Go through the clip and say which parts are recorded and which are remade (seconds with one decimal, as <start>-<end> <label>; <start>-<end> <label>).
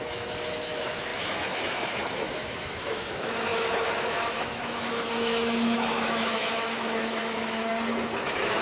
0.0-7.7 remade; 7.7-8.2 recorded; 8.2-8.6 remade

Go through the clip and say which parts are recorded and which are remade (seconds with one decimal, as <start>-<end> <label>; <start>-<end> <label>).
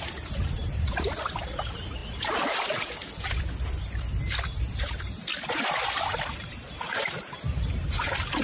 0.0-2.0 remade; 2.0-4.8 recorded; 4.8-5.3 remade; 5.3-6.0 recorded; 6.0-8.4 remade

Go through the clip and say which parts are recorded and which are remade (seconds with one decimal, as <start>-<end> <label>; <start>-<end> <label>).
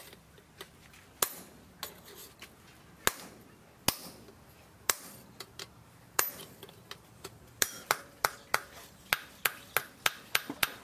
0.0-4.0 recorded; 4.0-9.0 remade; 9.0-10.8 recorded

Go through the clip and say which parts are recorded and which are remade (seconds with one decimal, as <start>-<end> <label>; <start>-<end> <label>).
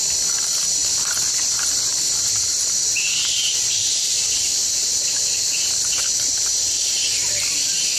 0.0-8.0 recorded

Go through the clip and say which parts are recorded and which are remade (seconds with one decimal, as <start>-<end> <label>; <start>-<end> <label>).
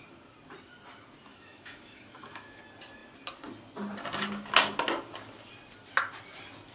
0.0-1.3 recorded; 1.3-2.6 remade; 2.6-6.7 recorded